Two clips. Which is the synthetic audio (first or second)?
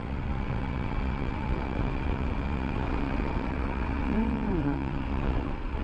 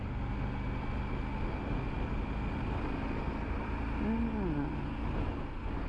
first